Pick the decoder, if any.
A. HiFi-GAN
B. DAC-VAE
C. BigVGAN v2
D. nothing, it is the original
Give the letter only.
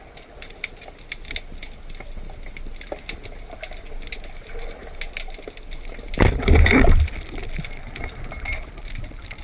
D